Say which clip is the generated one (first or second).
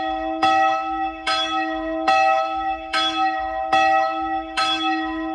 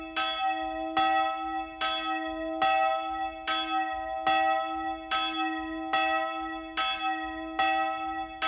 first